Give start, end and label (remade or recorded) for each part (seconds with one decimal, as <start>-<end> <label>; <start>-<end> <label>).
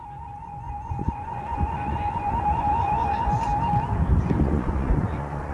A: 0.0-3.5 remade; 3.5-4.4 recorded; 4.4-5.5 remade